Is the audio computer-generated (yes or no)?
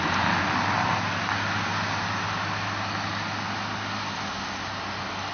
no